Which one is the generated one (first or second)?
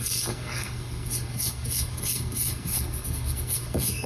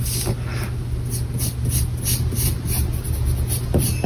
first